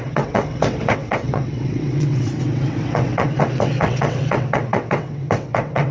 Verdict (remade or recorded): remade